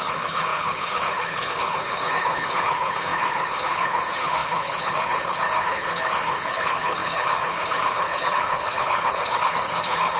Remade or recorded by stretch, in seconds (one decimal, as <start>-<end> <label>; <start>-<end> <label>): 0.0-10.2 remade